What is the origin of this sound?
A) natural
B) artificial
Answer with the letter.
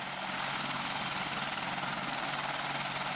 A